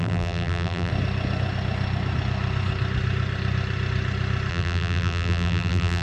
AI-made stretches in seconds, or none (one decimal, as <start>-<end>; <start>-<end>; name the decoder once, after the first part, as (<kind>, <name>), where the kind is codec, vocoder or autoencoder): 0.0-0.9 (vocoder, BigVGAN v2); 4.5-6.0